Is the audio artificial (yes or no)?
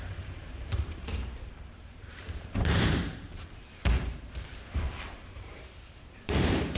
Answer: yes